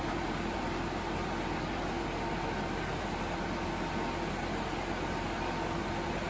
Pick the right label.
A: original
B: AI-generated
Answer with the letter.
A